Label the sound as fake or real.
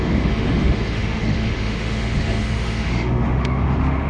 fake